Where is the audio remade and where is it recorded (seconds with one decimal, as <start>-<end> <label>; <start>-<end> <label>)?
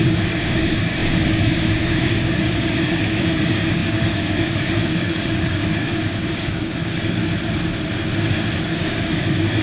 0.0-7.2 remade; 7.2-8.7 recorded; 8.7-9.6 remade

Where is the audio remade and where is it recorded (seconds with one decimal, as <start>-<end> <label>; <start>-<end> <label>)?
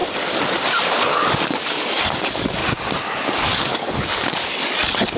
0.0-0.7 recorded; 0.7-2.6 remade; 2.6-3.3 recorded; 3.3-5.2 remade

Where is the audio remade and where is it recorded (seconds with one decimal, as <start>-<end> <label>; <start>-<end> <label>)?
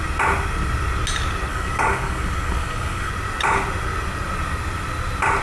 0.0-1.5 recorded; 1.5-3.1 remade; 3.1-5.4 recorded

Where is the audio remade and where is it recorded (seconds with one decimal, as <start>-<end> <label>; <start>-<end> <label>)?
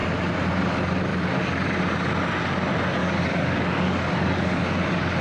0.0-3.0 recorded; 3.0-4.6 remade; 4.6-5.2 recorded